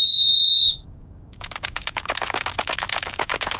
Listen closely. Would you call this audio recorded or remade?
remade